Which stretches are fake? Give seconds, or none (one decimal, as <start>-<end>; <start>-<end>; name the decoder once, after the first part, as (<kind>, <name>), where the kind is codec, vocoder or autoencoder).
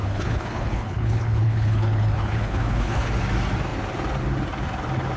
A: 0.0-3.1 (codec, HILCodec)